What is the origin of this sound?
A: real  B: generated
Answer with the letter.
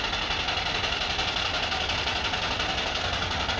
A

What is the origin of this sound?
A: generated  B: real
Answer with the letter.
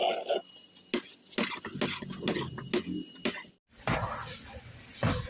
B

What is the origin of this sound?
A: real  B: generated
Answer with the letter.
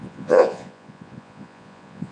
B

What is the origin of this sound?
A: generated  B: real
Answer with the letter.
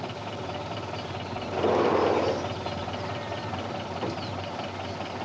B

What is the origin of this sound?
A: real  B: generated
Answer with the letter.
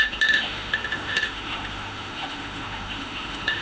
B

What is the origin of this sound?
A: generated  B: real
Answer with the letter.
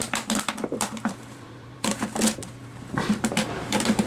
A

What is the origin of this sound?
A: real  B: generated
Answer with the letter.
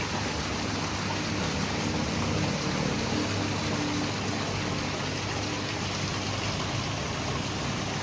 A